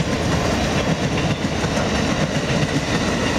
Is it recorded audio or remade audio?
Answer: recorded